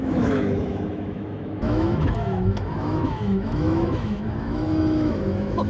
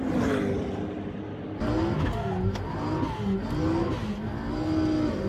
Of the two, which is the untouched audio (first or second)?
second